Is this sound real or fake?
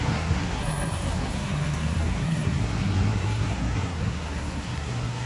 fake